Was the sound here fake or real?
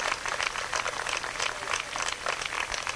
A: real